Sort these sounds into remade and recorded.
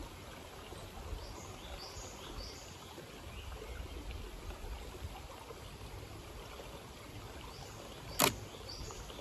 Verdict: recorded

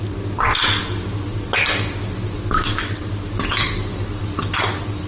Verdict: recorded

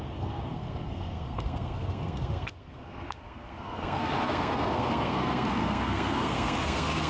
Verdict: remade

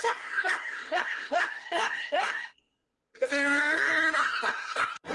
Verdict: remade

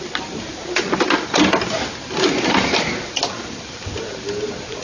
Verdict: recorded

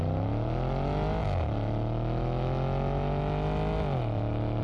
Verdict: recorded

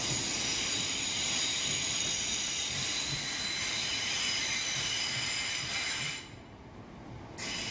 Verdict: recorded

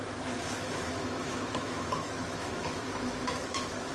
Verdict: remade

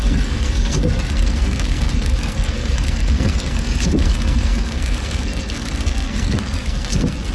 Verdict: remade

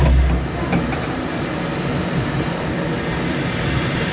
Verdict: recorded